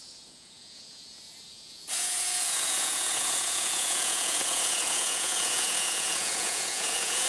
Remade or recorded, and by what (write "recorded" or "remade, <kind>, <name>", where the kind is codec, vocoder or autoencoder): remade, vocoder, Vocos